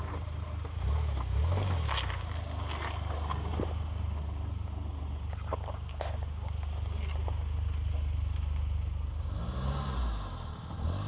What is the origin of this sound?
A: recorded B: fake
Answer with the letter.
A